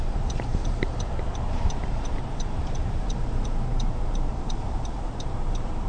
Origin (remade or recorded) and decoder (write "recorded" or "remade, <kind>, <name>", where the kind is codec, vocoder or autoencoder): remade, vocoder, BigVGAN v2